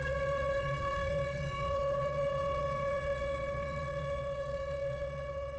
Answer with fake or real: fake